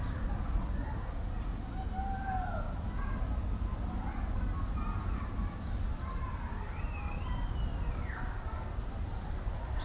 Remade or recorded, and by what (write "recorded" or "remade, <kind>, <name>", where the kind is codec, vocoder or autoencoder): recorded